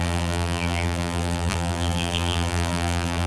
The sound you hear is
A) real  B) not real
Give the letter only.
B